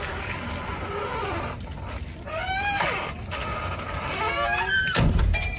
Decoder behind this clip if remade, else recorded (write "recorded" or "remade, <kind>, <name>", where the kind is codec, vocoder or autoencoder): remade, vocoder, BigVGAN v2